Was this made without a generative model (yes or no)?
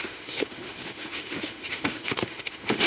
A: no